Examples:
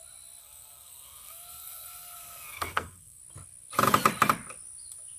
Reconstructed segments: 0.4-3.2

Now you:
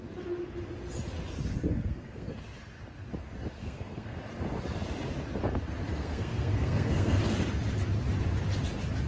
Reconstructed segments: 1.7-2.4; 3.6-4.2; 5.9-7.2

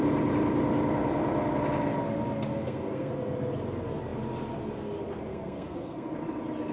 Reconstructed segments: 2.5-3.1; 5.3-6.1

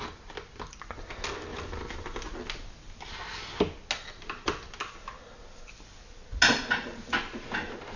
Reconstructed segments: none